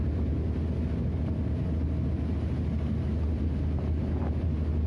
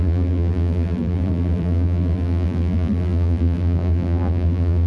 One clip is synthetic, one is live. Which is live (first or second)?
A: first